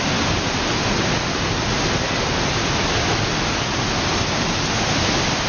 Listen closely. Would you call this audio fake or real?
real